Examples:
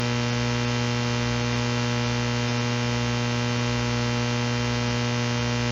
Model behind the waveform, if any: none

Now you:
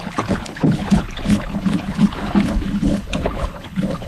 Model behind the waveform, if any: codec, HILCodec